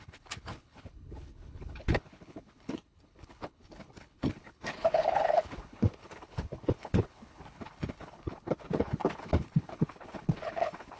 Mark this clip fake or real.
fake